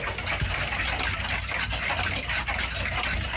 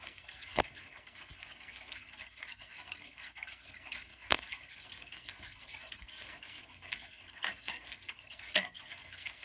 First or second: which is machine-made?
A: second